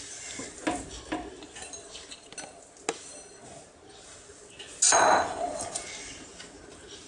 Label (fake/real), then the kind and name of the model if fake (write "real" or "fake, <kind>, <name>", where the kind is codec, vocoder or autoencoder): real